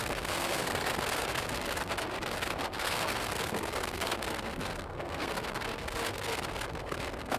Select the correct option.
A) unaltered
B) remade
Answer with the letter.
B